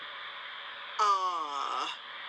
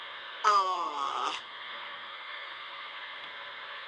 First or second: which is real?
first